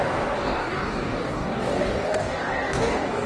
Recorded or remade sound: remade